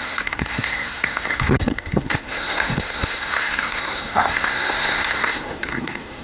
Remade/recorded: remade